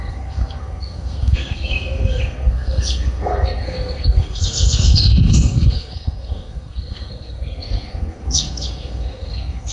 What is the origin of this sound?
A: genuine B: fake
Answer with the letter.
B